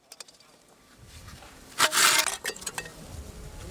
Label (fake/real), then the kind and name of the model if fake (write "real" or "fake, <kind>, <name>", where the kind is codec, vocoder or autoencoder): real